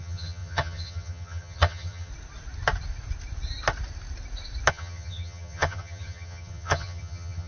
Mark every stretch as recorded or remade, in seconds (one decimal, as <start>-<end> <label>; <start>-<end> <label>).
0.0-2.1 remade; 2.1-4.7 recorded; 4.7-7.5 remade